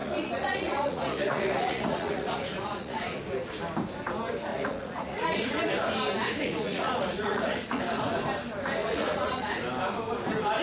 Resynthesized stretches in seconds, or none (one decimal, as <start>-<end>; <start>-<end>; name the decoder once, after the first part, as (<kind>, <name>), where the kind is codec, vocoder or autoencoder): 0.0-3.2 (vocoder, Vocos); 4.5-5.7; 6.4-7.8; 8.8-9.6